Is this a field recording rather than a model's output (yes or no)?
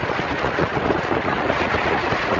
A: no